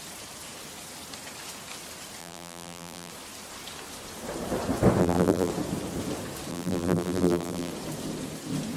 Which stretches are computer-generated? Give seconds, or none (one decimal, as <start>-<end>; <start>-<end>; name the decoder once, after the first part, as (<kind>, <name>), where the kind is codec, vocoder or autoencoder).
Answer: 2.2-3.1 (vocoder, BigVGAN v2); 5.0-5.5; 6.5-7.7